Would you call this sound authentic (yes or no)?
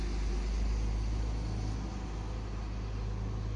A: yes